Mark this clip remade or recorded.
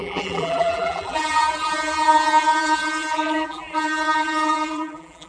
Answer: remade